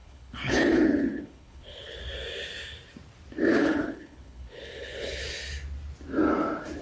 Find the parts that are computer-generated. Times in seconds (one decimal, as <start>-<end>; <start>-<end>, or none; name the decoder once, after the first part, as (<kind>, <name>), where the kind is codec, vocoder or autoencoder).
0.0-2.0 (codec, HILCodec); 3.5-5.2